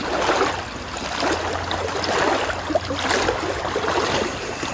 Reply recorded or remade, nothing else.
recorded